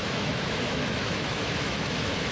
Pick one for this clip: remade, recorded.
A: remade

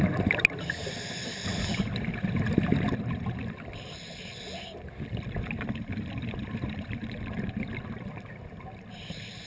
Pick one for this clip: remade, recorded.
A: recorded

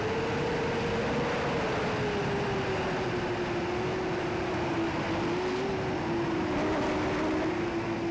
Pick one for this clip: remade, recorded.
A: recorded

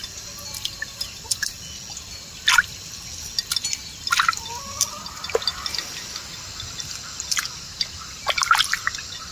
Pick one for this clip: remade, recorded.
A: recorded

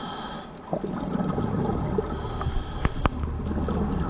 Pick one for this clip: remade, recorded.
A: recorded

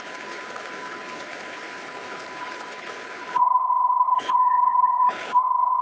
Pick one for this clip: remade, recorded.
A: remade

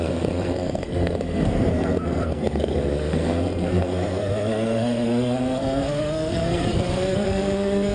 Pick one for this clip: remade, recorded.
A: remade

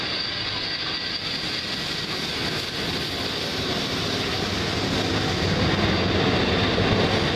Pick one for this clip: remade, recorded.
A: recorded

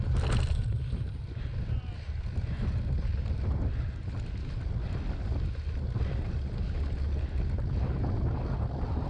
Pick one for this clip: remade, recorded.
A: recorded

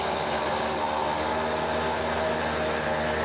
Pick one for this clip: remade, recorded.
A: recorded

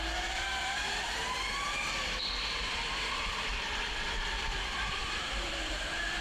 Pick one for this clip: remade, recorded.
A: remade